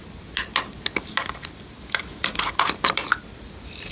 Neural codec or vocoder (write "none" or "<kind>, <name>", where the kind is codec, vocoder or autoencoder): none